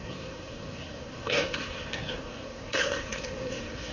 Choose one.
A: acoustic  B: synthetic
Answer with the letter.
B